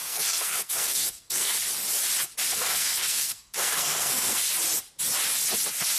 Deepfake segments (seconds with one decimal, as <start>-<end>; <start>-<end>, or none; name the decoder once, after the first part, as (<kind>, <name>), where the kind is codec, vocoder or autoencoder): 0.0-1.6 (codec, SNAC); 2.5-4.4